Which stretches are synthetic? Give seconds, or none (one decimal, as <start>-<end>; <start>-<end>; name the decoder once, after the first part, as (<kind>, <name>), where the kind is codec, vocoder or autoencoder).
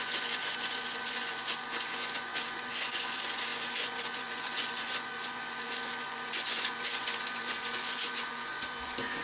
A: 0.0-9.2 (vocoder, Vocos)